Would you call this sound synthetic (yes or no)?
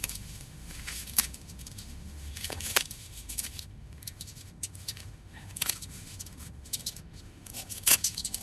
yes